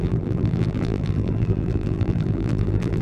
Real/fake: fake